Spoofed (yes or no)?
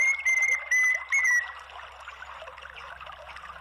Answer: no